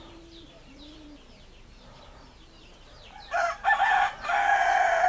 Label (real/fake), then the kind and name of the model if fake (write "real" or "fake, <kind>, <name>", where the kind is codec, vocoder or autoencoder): fake, vocoder, BigVGAN v2